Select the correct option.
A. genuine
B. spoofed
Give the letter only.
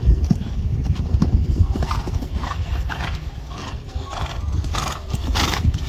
B